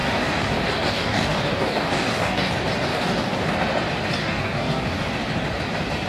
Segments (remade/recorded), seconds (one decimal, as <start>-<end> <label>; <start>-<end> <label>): 0.0-2.5 remade; 2.5-2.9 recorded; 2.9-3.5 remade; 3.5-4.2 recorded; 4.2-5.1 remade; 5.1-6.1 recorded